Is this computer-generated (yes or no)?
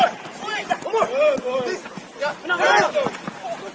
no